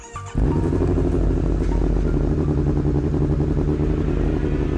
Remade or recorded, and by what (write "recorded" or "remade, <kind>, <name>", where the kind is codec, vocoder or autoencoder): recorded